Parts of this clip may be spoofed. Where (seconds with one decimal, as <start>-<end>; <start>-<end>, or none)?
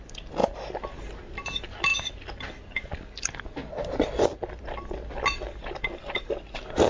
none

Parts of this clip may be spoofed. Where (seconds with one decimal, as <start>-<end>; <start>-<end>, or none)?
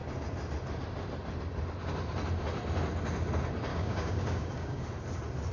3.7-4.8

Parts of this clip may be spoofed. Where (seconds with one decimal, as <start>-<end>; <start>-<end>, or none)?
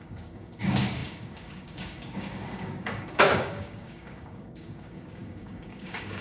0.0-6.2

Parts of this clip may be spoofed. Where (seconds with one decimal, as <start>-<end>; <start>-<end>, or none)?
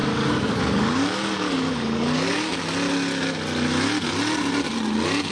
0.0-2.6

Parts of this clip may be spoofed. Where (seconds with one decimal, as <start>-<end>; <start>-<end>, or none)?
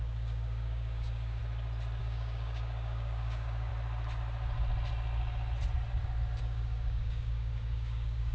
0.0-1.4; 2.0-3.7; 6.4-8.3